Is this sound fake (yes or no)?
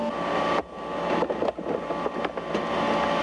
no